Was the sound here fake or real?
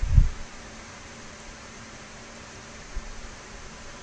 fake